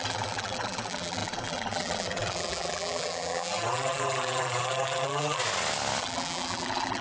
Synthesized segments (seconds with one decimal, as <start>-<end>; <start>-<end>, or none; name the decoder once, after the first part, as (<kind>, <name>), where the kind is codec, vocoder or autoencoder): 0.0-5.4 (vocoder, BigVGAN v2); 6.0-7.0